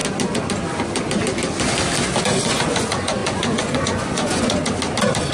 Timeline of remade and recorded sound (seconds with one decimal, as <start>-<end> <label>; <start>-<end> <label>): 0.0-2.2 recorded; 2.2-4.6 remade; 4.6-5.3 recorded